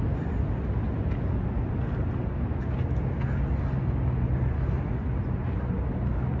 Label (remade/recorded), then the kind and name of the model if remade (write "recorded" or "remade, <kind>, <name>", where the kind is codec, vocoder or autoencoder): recorded